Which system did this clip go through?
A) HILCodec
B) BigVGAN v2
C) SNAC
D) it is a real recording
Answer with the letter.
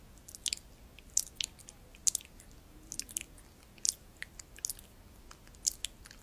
D